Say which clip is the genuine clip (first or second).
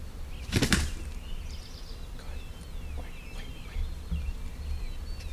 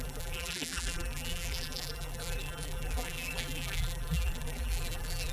first